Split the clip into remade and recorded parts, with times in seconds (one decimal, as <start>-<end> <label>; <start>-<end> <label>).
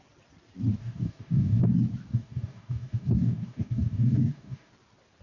0.0-0.8 recorded; 0.8-1.6 remade; 1.6-2.1 recorded; 2.1-4.7 remade; 4.7-5.2 recorded